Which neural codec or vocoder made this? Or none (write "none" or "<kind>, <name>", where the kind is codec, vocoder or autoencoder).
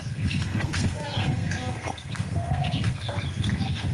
codec, SNAC